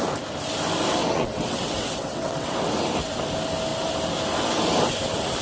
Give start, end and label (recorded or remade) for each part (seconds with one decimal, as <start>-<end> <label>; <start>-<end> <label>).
0.0-1.0 recorded; 1.0-2.7 remade; 2.7-5.4 recorded